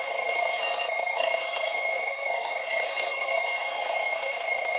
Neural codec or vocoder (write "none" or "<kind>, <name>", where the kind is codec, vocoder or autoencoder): codec, SNAC